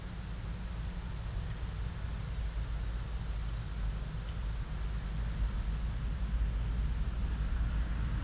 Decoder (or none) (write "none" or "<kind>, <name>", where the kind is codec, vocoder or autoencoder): none